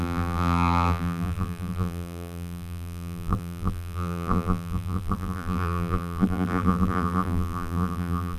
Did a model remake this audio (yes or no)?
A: yes